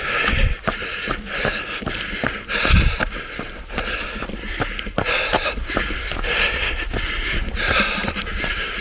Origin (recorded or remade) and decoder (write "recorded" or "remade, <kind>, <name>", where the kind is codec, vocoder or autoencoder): recorded